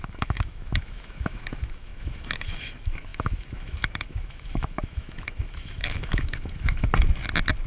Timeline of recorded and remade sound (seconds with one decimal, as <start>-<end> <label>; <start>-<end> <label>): 0.0-6.9 remade; 6.9-7.7 recorded

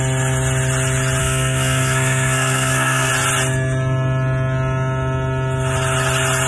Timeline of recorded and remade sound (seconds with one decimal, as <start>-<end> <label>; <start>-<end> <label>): 0.0-1.2 recorded; 1.2-3.1 remade; 3.1-6.5 recorded

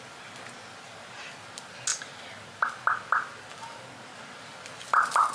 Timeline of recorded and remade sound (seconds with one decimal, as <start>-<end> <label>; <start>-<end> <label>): 0.0-5.3 recorded

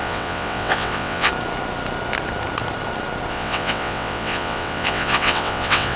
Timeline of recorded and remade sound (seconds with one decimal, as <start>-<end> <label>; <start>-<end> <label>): 0.0-1.3 remade; 1.3-3.3 recorded; 3.3-6.0 remade